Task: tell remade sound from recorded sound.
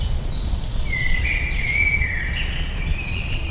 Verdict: remade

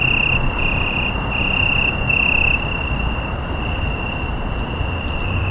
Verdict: recorded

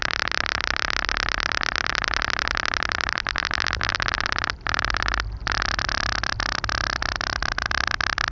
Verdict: recorded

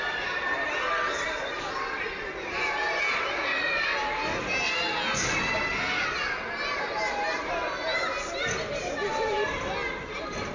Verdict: recorded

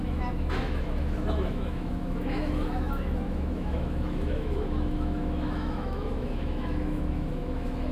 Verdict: remade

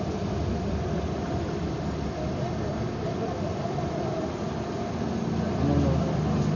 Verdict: recorded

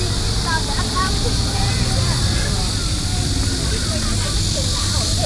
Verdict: recorded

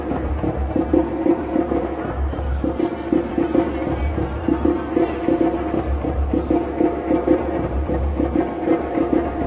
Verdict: remade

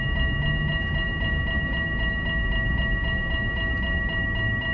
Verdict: recorded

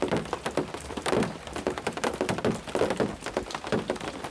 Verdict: recorded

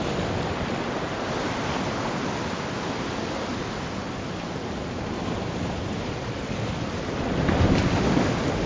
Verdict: recorded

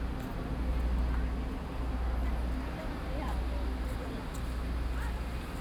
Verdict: recorded